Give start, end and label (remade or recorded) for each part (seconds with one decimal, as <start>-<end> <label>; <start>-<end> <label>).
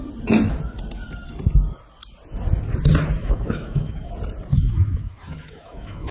0.0-3.2 recorded; 3.2-4.1 remade; 4.1-4.5 recorded; 4.5-6.1 remade